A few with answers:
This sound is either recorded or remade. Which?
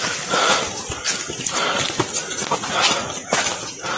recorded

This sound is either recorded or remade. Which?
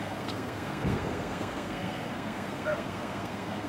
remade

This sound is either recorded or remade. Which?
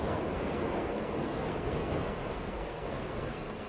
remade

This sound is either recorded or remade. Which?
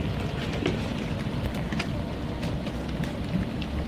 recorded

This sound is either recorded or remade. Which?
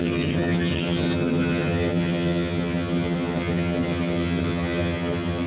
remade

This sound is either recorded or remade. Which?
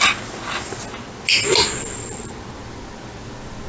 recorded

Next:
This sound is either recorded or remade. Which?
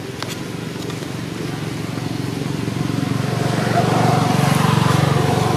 recorded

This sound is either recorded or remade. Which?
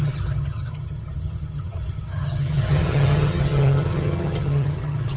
remade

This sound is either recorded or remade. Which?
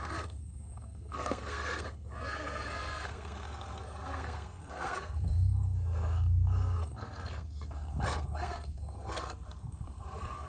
remade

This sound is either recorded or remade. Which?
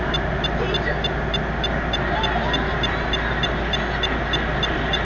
recorded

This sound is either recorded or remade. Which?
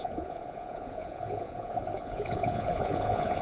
remade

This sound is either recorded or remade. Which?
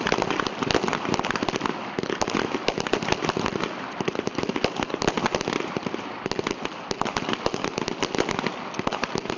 recorded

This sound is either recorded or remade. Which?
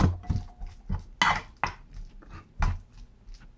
recorded